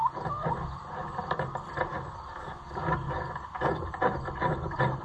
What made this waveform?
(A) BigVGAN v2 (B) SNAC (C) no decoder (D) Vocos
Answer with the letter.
C